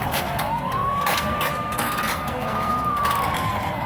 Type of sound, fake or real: fake